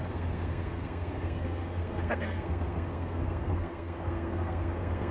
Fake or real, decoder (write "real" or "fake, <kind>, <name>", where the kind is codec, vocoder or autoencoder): fake, codec, SNAC